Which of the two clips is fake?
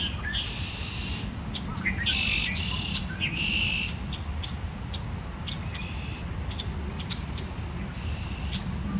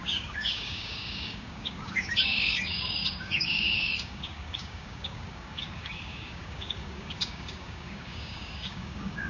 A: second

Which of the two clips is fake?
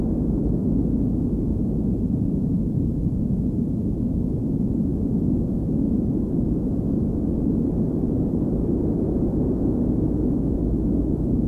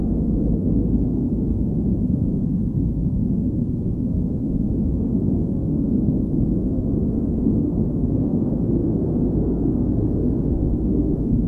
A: second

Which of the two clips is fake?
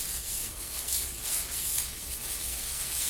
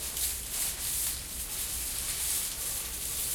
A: first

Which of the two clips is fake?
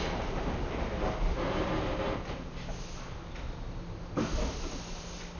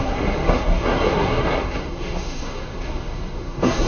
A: second